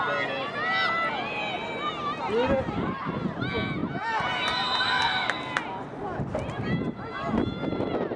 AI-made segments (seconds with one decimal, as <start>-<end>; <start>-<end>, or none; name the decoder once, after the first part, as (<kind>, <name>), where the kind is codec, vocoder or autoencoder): none